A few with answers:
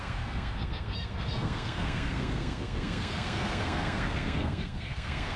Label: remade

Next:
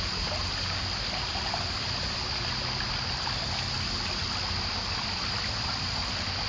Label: recorded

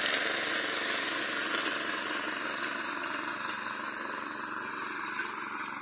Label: recorded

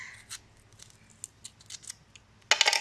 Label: recorded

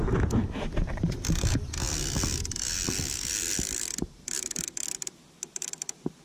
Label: recorded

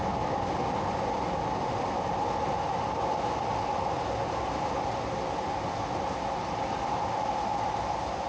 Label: recorded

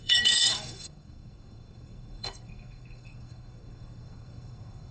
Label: remade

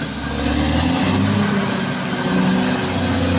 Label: recorded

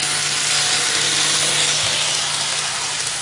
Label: recorded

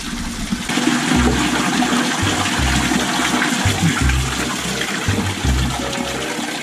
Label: recorded